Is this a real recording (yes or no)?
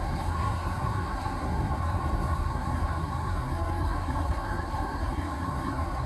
no